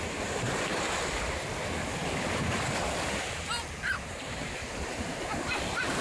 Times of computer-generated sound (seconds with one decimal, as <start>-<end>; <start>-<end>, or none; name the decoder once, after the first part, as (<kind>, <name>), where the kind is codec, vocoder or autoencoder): 0.0-0.7 (vocoder, BigVGAN v2); 4.0-6.0